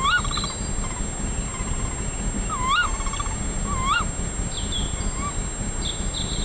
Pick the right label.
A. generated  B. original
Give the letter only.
B